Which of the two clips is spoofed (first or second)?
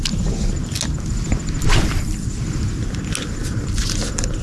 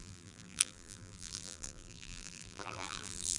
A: second